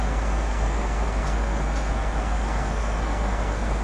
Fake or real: fake